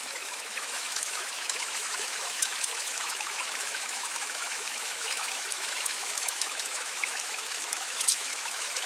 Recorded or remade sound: remade